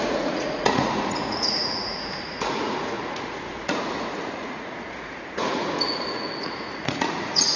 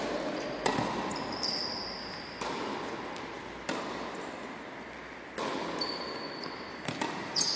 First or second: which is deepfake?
first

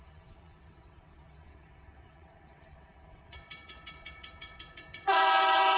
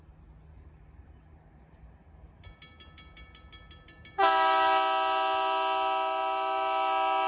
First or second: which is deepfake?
first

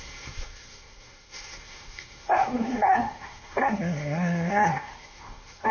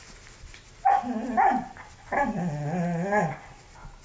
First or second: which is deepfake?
first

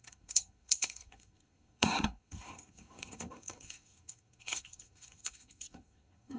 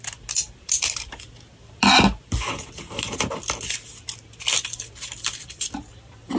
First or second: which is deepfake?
first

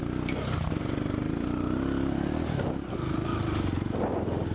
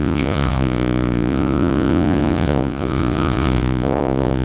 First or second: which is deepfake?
second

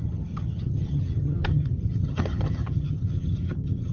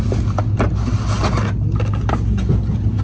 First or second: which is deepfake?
first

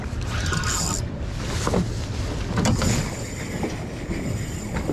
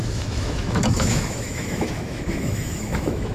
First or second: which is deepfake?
second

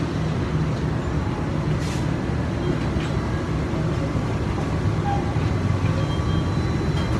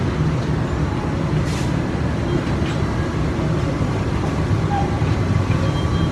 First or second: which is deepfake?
second